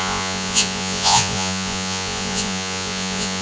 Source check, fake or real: fake